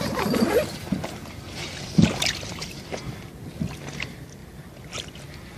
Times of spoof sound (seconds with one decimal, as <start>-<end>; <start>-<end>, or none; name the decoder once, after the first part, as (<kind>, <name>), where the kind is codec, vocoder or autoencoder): none